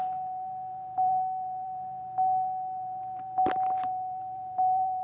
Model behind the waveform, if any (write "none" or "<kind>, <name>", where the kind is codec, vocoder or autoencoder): vocoder, BigVGAN v2